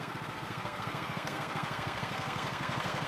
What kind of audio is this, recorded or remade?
remade